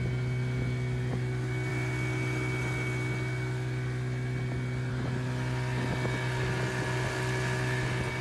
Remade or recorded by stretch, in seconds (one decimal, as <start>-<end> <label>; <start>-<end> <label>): 0.0-8.2 recorded